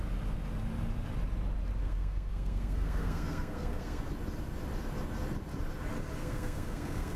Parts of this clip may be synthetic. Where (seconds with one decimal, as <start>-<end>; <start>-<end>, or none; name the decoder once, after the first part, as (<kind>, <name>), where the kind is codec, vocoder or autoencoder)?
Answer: 1.8-4.1 (codec, SNAC); 6.2-7.2